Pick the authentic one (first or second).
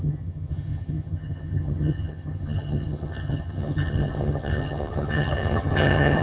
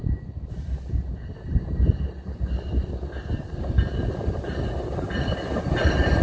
second